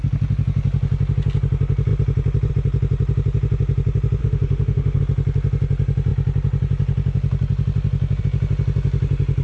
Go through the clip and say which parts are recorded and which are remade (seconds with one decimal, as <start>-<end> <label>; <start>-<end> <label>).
0.0-4.2 recorded; 4.2-5.0 remade; 5.0-9.4 recorded